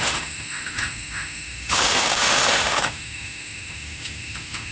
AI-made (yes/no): yes